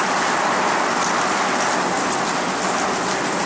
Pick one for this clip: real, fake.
real